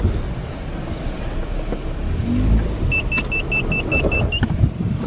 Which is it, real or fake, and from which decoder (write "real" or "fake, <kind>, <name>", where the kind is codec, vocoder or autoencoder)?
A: real